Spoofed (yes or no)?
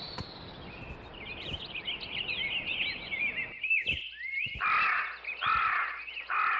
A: no